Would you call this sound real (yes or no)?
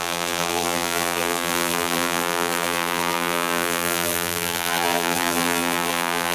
no